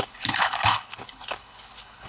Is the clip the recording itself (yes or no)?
no